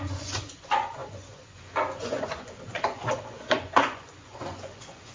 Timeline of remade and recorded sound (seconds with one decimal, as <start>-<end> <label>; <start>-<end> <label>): 0.0-5.1 remade